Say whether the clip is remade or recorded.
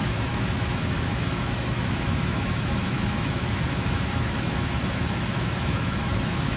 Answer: remade